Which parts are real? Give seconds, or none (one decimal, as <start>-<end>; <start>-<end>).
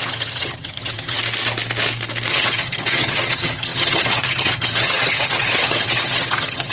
1.2-2.3